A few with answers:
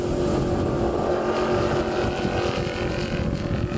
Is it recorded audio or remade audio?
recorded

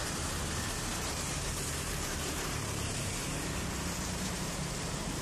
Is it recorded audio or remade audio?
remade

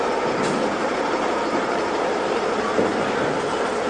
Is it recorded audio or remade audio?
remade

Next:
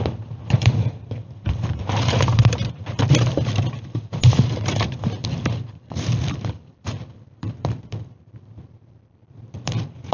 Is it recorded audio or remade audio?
remade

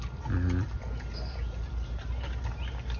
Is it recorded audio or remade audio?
recorded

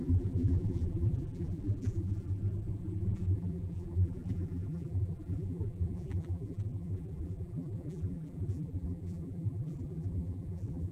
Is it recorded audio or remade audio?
remade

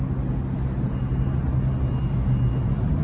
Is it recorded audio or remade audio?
recorded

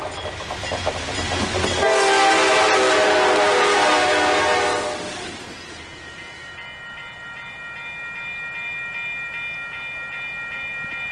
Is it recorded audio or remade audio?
recorded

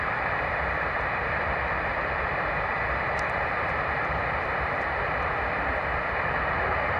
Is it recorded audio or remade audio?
remade